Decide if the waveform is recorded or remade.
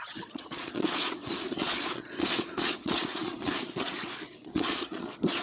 remade